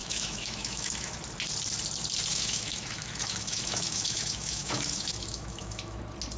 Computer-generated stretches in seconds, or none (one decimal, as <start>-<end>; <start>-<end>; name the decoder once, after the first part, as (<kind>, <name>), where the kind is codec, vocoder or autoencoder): 0.0-1.2 (autoencoder, DAC-VAE); 2.3-6.0